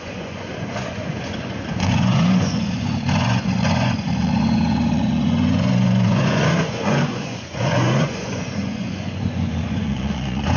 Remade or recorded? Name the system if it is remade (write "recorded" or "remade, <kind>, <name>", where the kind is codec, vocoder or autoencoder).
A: remade, vocoder, Vocos